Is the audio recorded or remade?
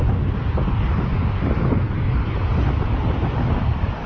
recorded